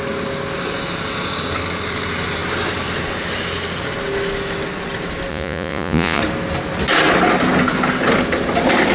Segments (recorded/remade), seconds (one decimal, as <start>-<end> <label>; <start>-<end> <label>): 0.0-5.3 recorded; 5.3-6.2 remade; 6.2-8.9 recorded